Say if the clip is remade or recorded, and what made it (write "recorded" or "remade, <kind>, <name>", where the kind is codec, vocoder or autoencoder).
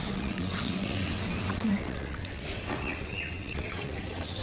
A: remade, vocoder, WaveNeXt